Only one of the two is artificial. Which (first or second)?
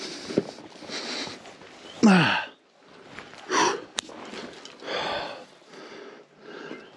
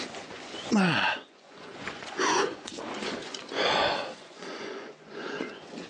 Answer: second